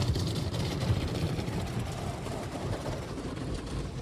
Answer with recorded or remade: remade